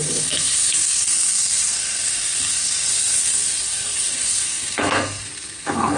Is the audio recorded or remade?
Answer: remade